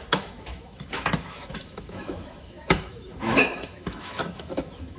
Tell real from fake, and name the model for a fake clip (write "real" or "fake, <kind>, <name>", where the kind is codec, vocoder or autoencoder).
fake, autoencoder, DAC-VAE